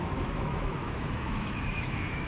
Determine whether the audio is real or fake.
fake